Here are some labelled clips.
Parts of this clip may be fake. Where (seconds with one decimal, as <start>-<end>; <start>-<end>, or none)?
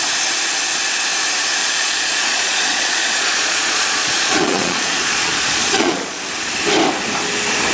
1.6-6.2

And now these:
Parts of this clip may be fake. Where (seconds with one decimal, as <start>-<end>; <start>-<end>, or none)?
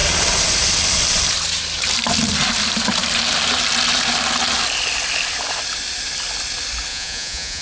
6.9-7.6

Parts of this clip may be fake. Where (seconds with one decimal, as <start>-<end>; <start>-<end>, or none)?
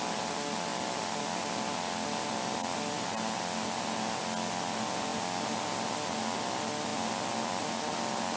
none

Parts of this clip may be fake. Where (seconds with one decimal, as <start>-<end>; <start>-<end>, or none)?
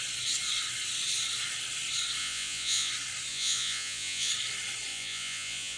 2.2-2.9; 3.3-4.3; 4.9-5.8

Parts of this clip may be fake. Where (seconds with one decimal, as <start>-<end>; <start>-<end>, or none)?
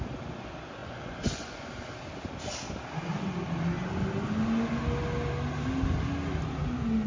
0.8-1.7